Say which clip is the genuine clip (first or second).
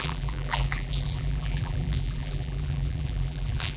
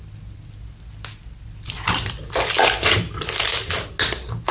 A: second